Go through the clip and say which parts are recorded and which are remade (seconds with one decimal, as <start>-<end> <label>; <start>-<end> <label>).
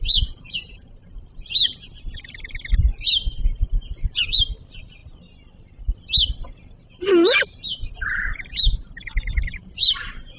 0.0-1.6 remade; 1.6-3.4 recorded; 3.4-5.0 remade; 5.0-6.7 recorded; 6.7-10.4 remade